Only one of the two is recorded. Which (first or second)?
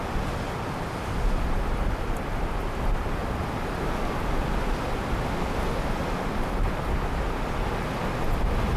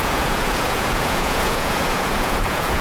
first